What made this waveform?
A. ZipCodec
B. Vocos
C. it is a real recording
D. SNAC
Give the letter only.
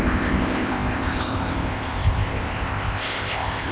A